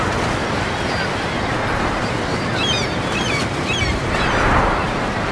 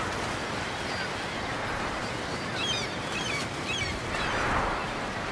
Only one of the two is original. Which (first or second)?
first